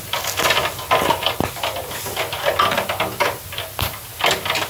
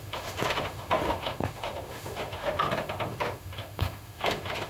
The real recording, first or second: first